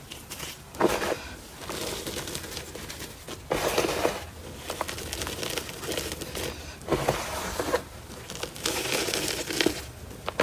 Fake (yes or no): no